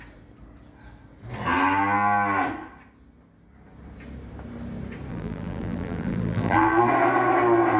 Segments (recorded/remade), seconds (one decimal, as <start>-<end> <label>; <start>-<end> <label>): 0.0-5.1 recorded; 5.1-6.8 remade; 6.8-7.8 recorded